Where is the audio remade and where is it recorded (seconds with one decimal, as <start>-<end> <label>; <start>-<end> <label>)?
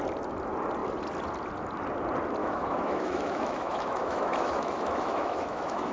0.0-2.4 recorded; 2.4-5.9 remade